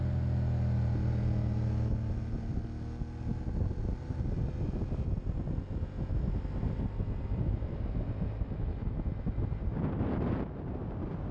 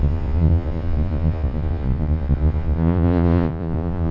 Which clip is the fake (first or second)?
second